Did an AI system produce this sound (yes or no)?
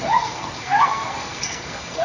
yes